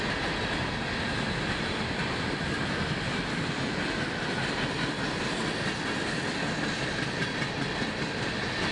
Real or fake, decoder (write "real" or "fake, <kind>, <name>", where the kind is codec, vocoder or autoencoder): real